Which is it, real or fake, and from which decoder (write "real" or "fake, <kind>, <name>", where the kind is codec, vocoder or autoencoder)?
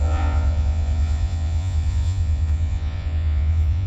fake, vocoder, Vocos